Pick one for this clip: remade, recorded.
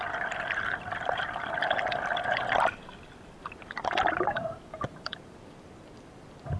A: remade